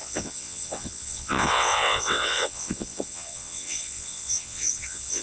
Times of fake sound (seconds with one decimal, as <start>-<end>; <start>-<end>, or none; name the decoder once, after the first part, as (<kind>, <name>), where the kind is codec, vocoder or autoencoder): 0.0-5.2 (vocoder, WaveNeXt)

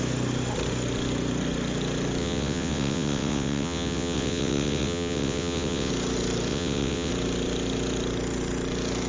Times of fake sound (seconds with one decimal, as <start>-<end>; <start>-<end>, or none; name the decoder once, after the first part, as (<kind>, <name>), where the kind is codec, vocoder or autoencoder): 2.2-5.9 (vocoder, WaveNeXt); 6.5-7.1

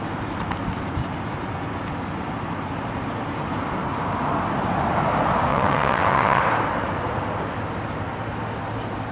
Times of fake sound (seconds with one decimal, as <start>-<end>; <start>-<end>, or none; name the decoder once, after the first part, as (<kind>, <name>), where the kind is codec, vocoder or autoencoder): 5.5-6.4 (vocoder, WaveNeXt)

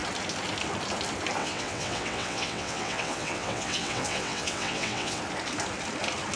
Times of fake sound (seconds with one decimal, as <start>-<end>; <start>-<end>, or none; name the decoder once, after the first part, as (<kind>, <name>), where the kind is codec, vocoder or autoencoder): 1.4-5.2 (vocoder, WaveNeXt)

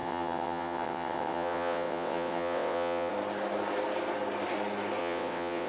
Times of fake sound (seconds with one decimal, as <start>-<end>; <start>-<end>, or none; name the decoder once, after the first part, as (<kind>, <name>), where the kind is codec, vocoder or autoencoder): 0.0-3.1 (vocoder, WaveNeXt); 5.0-5.7